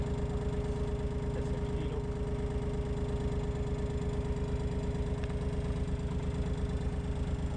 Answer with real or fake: real